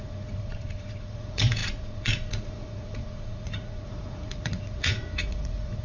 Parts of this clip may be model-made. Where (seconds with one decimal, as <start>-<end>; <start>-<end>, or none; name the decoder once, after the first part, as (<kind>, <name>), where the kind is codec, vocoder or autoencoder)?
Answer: 0.0-5.8 (vocoder, Vocos)